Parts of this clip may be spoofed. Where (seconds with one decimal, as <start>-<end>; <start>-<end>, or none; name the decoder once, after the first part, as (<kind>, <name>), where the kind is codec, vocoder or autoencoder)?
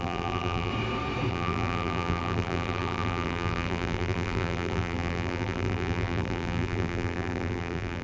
0.0-0.7 (vocoder, BigVGAN v2); 1.3-8.0